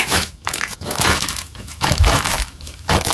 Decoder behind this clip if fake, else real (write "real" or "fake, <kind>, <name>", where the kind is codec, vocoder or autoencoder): fake, autoencoder, DAC-VAE